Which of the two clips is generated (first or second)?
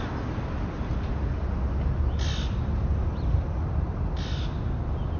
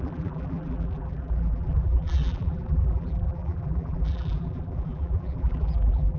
second